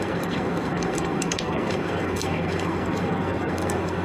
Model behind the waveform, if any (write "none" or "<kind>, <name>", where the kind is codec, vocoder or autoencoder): codec, SNAC